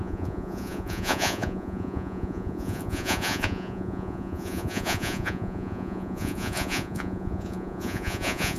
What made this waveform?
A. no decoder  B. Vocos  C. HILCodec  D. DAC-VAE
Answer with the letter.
B